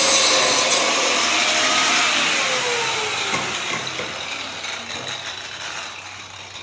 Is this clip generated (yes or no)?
no